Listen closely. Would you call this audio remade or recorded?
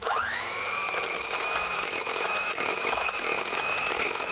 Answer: remade